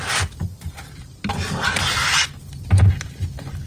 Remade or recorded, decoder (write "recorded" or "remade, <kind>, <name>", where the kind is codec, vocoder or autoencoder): recorded